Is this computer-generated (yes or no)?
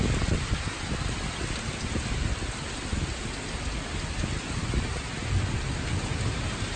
no